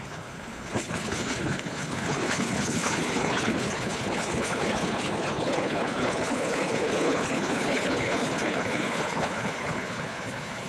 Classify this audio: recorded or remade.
remade